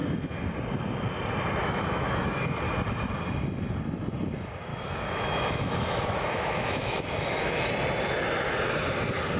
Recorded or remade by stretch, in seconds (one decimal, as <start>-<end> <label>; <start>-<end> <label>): 0.0-1.6 recorded; 1.6-2.6 remade; 2.6-4.7 recorded; 4.7-7.7 remade; 7.7-9.4 recorded